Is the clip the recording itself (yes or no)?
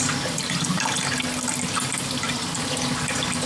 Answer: yes